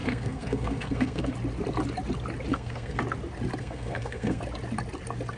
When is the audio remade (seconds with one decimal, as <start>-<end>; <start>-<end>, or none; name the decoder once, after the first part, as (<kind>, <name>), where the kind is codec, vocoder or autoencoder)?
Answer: 0.0-1.3 (codec, SNAC); 2.5-3.0; 3.6-4.4